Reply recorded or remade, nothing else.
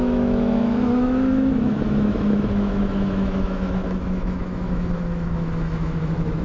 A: remade